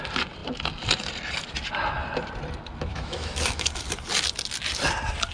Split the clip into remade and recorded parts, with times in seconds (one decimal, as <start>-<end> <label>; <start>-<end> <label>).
0.0-2.9 recorded; 2.9-3.7 remade; 3.7-5.3 recorded